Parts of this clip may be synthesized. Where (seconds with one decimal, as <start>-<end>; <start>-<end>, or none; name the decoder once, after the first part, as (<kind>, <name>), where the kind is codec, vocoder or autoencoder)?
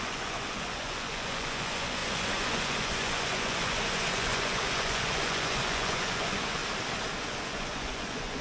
0.0-6.6 (vocoder, Vocos); 7.2-8.4